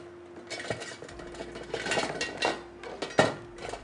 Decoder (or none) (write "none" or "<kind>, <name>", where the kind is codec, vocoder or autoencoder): none